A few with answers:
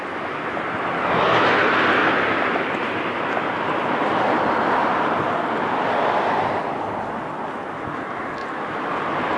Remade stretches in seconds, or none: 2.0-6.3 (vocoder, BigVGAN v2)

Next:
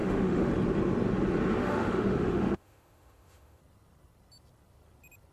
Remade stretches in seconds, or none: 0.0-0.5 (autoencoder, DAC-VAE); 1.6-3.6